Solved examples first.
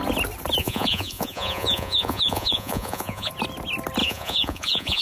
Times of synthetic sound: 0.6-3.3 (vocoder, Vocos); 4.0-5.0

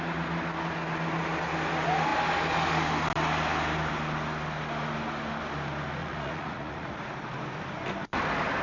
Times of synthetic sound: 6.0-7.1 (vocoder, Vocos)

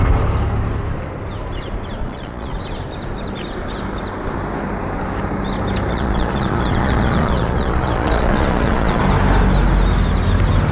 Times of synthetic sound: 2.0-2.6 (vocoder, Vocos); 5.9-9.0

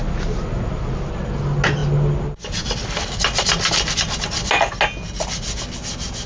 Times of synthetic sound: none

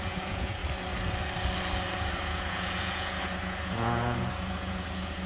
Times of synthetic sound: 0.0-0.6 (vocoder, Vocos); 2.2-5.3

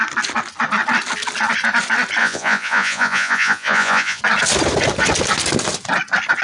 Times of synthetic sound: 2.2-4.2 (vocoder, Vocos)

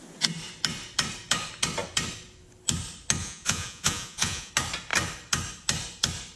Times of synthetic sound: 3.2-4.5 (vocoder, Vocos)

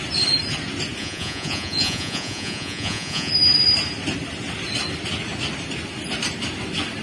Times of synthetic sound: 1.0-3.3 (vocoder, Vocos)